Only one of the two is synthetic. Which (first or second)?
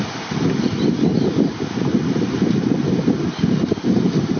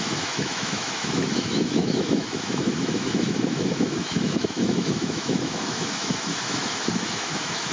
second